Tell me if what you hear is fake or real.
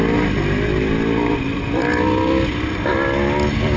real